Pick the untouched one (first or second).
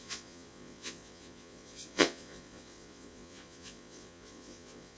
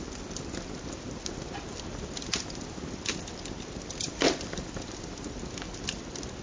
second